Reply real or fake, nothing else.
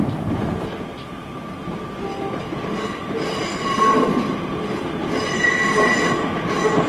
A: real